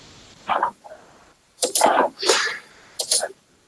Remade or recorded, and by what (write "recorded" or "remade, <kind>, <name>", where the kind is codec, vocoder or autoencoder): remade, vocoder, BigVGAN v2